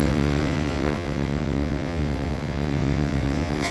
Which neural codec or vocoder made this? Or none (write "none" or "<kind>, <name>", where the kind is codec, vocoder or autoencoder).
vocoder, WaveNeXt